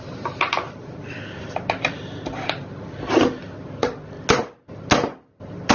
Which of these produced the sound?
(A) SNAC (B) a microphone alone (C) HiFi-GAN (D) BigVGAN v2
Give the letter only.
B